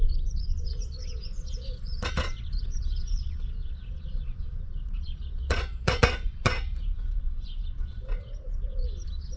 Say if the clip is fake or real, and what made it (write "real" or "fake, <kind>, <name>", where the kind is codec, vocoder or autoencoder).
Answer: fake, vocoder, Vocos